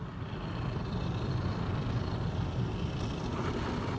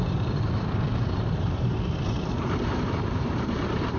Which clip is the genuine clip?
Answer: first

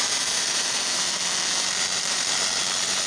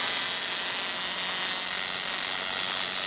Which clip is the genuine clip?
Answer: second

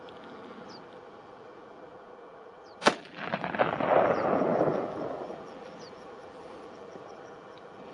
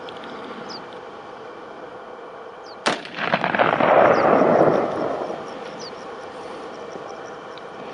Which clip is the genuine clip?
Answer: second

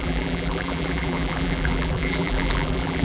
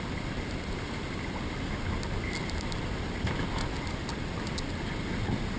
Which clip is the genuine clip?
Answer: second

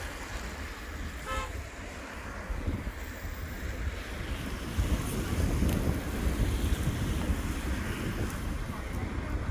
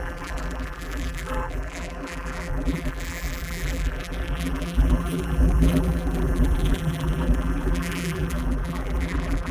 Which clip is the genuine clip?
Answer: first